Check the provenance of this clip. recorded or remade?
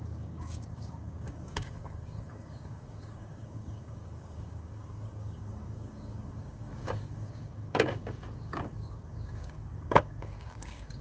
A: remade